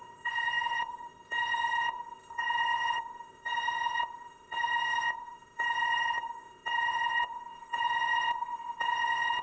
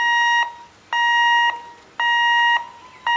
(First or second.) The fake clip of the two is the first